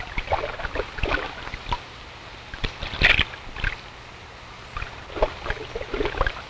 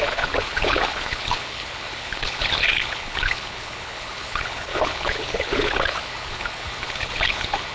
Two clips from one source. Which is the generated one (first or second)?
second